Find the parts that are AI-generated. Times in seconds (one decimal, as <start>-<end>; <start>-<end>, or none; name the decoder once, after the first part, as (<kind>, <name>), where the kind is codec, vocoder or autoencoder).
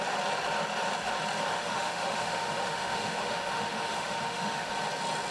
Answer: 1.5-4.7 (autoencoder, DAC-VAE)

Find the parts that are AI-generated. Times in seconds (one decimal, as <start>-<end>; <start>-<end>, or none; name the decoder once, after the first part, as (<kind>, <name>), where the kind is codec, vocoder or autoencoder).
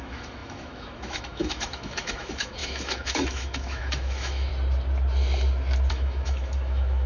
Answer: 0.0-4.5 (autoencoder, DAC-VAE); 5.9-7.1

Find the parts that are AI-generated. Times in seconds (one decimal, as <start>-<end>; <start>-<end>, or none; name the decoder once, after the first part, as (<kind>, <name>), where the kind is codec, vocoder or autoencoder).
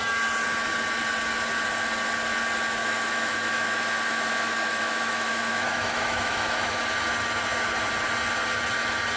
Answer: 2.8-6.8 (autoencoder, DAC-VAE)